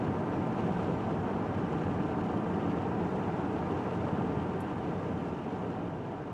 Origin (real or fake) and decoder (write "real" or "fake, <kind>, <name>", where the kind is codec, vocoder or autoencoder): real